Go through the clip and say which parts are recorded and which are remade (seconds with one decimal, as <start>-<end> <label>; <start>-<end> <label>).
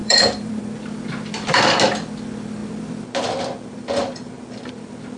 0.0-0.6 remade; 0.6-5.2 recorded